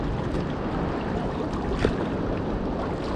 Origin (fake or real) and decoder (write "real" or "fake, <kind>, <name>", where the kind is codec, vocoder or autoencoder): real